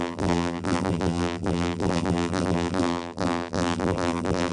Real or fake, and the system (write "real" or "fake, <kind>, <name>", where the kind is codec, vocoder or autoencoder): fake, vocoder, BigVGAN v2